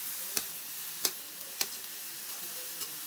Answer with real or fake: real